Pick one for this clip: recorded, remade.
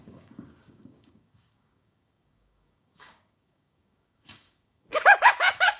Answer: remade